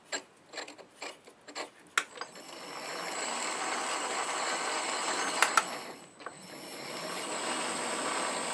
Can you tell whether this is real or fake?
real